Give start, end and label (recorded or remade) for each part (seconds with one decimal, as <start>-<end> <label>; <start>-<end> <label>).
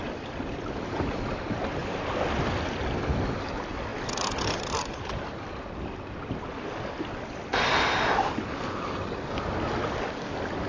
0.0-10.7 recorded